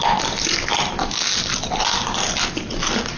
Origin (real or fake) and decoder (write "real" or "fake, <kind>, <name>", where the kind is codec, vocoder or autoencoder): real